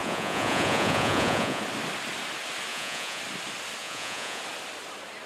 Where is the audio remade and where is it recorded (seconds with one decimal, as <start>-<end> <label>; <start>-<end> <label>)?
0.0-1.6 remade; 1.6-2.7 recorded; 2.7-3.2 remade; 3.2-3.8 recorded; 3.8-4.4 remade; 4.4-5.3 recorded